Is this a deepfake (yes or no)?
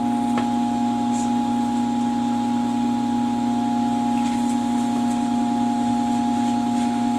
no